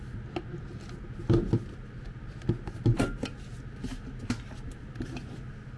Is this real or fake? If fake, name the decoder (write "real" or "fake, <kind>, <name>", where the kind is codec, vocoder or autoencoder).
real